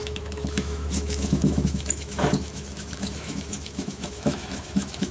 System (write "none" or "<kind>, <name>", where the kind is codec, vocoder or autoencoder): autoencoder, DAC-VAE